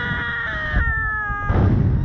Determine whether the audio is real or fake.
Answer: real